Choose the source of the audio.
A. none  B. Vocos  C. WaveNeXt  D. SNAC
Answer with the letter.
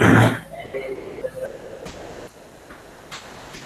A